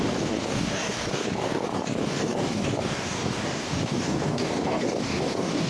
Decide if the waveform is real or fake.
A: fake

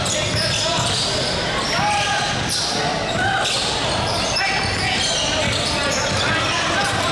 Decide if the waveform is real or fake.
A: real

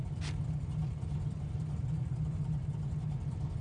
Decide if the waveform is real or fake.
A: real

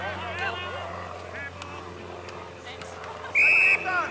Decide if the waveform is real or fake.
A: real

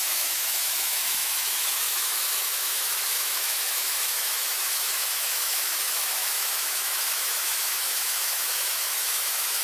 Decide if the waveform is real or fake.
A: fake